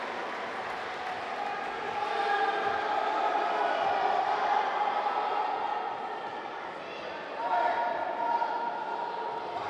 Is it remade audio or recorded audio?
recorded